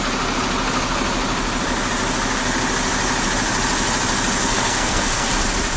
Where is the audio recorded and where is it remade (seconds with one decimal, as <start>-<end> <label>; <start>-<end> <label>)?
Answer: 0.0-4.4 recorded; 4.4-5.3 remade; 5.3-5.8 recorded